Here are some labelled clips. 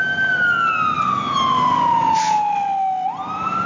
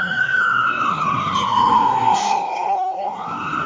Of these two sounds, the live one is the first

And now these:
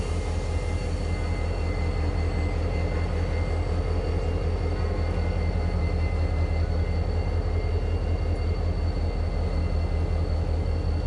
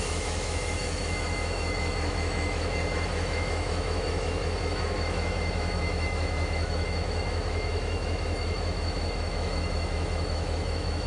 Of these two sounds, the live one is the first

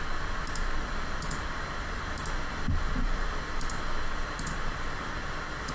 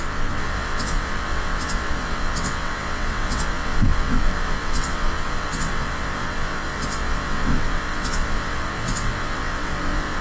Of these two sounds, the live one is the first